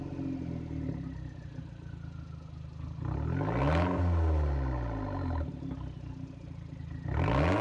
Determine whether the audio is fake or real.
real